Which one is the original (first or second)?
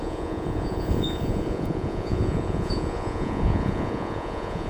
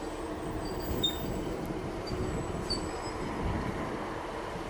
second